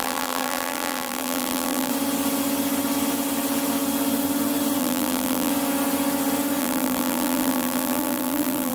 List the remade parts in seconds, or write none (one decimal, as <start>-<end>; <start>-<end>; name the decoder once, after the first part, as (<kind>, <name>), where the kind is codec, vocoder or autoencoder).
0.0-1.9 (vocoder, BigVGAN v2); 4.8-5.5; 6.6-8.7